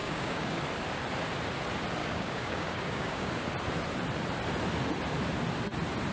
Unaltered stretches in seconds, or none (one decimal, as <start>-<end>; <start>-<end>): 0.6-2.0; 3.3-6.1